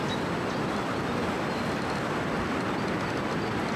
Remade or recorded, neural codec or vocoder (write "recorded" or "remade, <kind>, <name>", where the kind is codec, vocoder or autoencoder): recorded